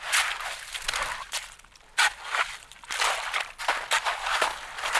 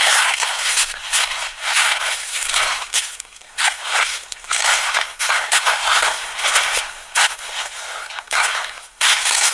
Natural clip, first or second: first